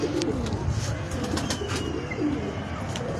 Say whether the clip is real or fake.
real